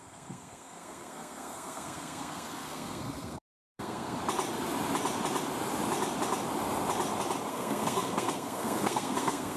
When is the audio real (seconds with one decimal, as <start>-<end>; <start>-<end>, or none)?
4.2-7.5

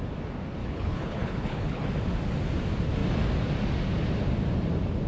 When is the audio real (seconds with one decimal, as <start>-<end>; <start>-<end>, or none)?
0.0-0.6; 1.9-5.1

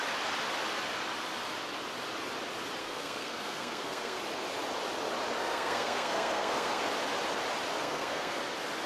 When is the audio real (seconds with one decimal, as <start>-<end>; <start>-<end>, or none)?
0.0-2.8; 4.2-5.4; 6.8-7.8; 8.4-8.9

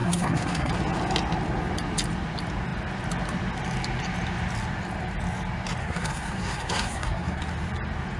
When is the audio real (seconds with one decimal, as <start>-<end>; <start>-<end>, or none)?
0.7-5.8; 7.4-8.2

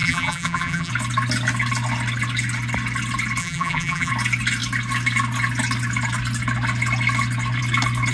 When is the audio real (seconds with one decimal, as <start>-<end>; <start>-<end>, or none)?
0.9-3.4; 4.1-8.1

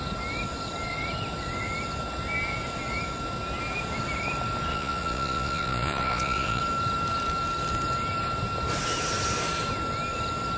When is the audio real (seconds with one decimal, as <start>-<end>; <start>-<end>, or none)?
0.0-4.7; 6.6-10.6